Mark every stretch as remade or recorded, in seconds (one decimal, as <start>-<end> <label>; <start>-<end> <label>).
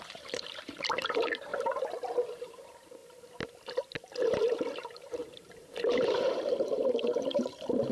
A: 0.0-1.5 remade; 1.5-2.3 recorded; 2.3-3.0 remade; 3.0-4.2 recorded; 4.2-5.2 remade; 5.2-6.0 recorded; 6.0-7.9 remade